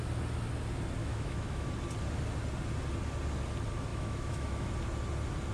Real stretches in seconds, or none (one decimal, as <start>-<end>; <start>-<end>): 0.0-1.0; 1.7-3.9; 4.7-5.5

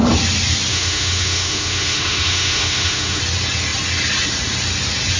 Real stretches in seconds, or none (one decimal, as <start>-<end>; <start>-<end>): 0.0-0.7; 3.2-5.2

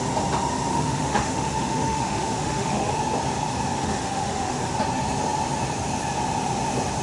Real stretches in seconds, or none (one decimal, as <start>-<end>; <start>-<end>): 0.0-0.7; 2.9-3.8; 4.6-7.0

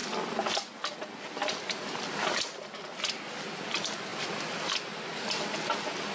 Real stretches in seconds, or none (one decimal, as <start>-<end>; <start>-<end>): 0.0-6.1

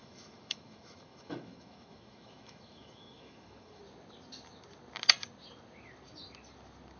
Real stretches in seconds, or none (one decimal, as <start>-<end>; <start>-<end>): 3.8-7.0

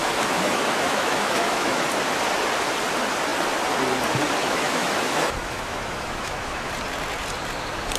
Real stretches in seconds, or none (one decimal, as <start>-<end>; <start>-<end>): 1.8-4.4; 6.7-8.0

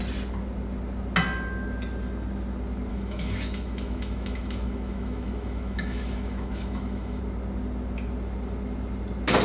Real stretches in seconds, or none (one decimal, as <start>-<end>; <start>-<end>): 0.0-2.9; 7.2-9.4